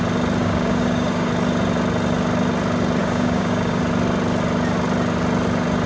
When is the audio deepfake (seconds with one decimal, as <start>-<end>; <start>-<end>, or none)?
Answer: 0.4-1.3; 3.0-3.8